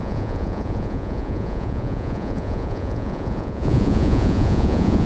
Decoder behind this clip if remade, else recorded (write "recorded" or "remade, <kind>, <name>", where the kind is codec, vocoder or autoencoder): remade, vocoder, Vocos